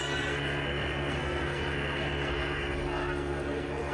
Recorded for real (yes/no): no